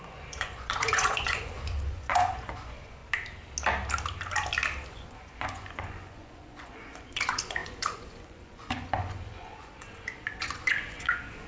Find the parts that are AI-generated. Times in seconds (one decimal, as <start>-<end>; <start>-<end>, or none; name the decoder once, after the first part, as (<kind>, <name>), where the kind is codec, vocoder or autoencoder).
0.0-3.0 (vocoder, Vocos); 4.9-11.5

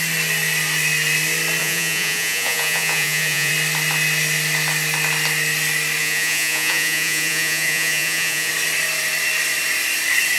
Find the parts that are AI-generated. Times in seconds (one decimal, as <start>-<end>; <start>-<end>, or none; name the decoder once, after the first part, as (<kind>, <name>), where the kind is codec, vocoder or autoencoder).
1.6-3.5 (vocoder, Vocos); 6.0-8.5

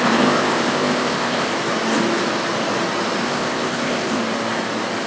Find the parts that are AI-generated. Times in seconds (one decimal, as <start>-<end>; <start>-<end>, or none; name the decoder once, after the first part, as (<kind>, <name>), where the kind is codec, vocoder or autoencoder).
0.0-1.5 (codec, ZipCodec); 3.2-4.2

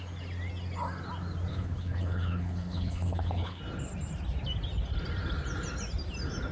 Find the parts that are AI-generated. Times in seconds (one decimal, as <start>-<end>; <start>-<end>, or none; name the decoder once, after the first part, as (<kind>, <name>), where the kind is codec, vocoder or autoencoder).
1.5-3.6 (codec, HILCodec)

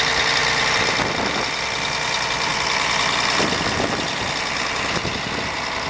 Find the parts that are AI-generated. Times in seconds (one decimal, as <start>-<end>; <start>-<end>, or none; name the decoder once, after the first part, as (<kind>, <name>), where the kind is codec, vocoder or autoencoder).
none